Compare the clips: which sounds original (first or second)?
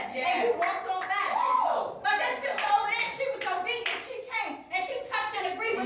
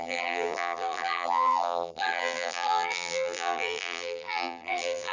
first